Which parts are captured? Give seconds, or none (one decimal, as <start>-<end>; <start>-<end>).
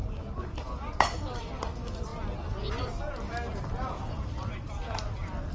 2.1-2.7